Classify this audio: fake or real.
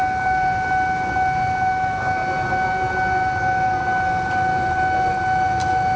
real